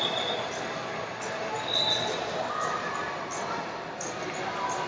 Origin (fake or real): real